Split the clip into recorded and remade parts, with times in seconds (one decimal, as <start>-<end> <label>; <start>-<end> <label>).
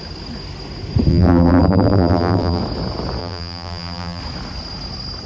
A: 0.0-1.1 recorded; 1.1-2.6 remade; 2.6-3.2 recorded; 3.2-4.2 remade; 4.2-5.3 recorded